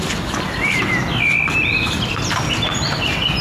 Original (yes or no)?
yes